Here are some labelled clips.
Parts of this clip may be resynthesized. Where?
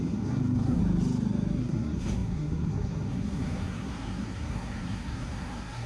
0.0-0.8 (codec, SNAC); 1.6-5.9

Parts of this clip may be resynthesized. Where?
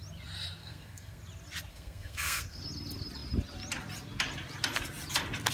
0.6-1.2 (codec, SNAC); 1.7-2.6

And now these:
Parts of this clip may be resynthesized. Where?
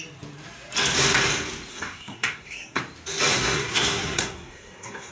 1.7-2.8 (codec, SNAC); 3.3-5.1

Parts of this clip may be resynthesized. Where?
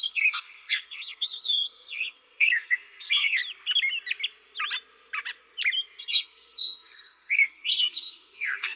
0.0-3.4 (codec, SNAC); 6.0-8.8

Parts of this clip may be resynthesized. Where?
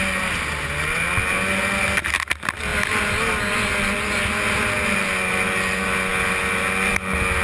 none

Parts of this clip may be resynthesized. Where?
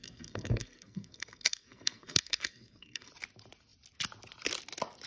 0.0-3.1 (codec, SNAC)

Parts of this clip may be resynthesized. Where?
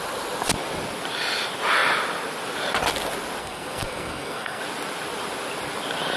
3.4-4.6 (codec, SNAC)